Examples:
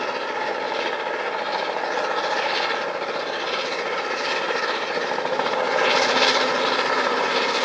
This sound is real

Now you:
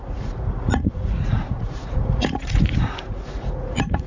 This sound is fake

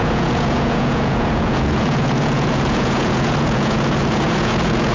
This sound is fake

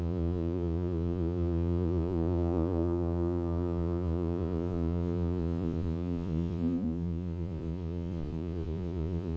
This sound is fake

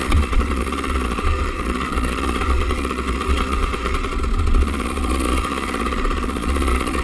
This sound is fake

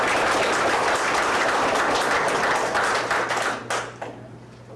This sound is real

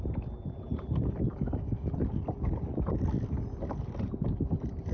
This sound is real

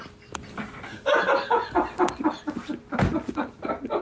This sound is real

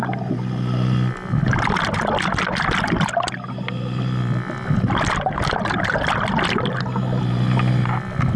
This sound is real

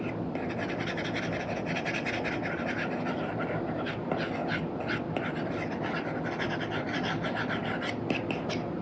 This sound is real